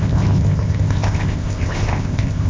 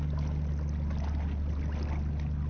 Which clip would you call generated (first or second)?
first